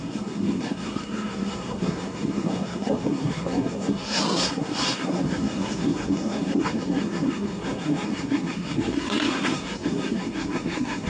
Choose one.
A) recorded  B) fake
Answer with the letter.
B